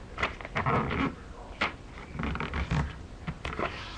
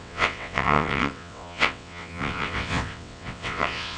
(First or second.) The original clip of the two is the first